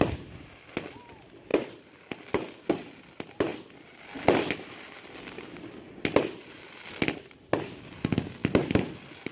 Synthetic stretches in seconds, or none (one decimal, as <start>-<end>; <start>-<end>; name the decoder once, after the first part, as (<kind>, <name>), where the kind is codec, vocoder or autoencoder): 1.5-3.0 (vocoder, BigVGAN v2); 3.5-5.4; 8.4-8.9